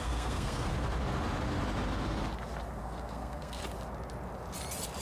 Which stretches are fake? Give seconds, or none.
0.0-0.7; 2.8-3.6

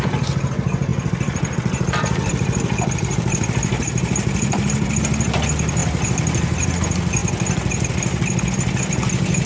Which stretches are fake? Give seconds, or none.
0.9-5.0

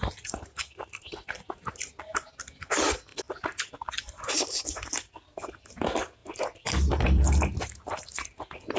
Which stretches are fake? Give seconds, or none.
none